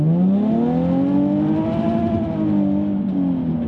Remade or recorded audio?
recorded